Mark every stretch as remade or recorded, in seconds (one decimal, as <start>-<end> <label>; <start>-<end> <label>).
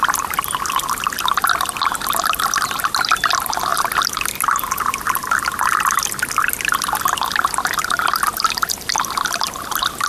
0.0-10.1 recorded